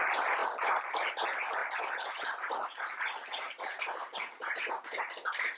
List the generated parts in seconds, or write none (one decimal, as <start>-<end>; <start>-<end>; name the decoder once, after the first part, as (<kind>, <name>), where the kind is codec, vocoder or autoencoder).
none